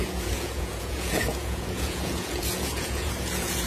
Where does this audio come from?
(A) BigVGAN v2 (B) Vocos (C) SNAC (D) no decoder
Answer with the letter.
B